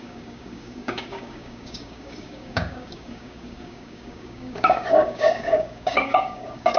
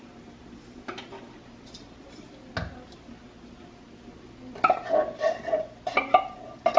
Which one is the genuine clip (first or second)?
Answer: second